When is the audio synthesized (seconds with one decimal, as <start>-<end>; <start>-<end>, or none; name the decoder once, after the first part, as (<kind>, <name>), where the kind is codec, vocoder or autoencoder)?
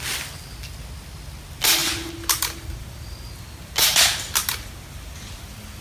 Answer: none